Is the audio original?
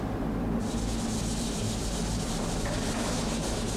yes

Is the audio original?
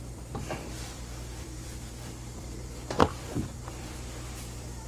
no